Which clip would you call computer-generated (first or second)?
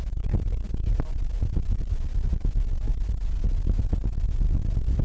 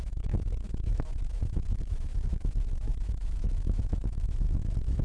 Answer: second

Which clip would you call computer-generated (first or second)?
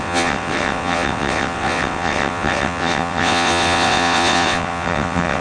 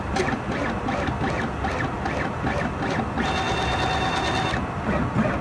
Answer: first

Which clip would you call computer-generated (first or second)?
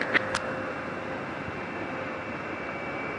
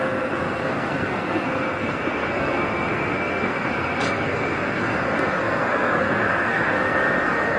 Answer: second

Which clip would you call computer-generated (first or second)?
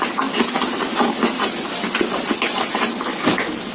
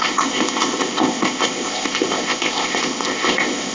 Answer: second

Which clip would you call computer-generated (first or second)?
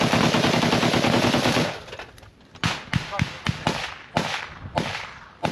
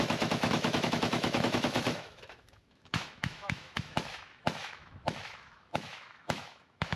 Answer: second